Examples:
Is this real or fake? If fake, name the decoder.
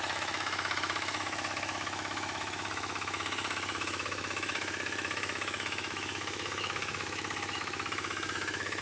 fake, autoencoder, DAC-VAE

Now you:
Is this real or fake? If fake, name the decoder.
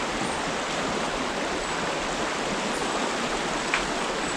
real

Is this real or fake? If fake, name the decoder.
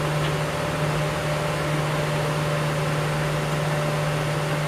real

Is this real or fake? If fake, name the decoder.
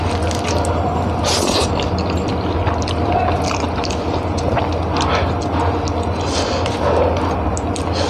real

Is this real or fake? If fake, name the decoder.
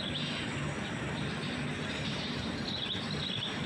fake, vocoder, BigVGAN v2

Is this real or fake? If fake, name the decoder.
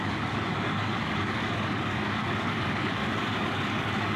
fake, codec, DAC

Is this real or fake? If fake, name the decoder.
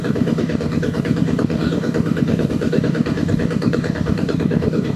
fake, codec, DAC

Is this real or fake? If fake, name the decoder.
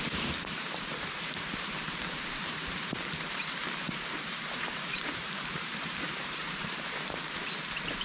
fake, vocoder, BigVGAN v2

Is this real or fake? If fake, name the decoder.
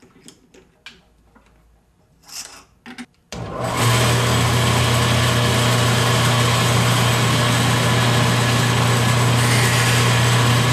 real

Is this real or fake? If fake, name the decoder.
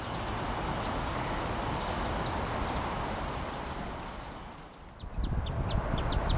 real